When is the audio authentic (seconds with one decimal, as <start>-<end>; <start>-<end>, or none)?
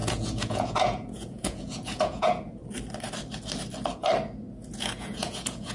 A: 2.6-4.5